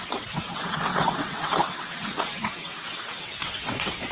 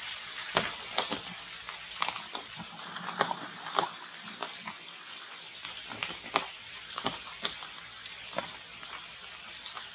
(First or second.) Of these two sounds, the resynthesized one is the first